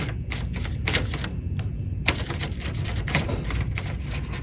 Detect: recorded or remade recorded